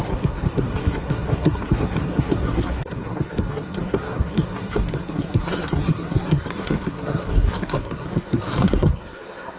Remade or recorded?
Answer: remade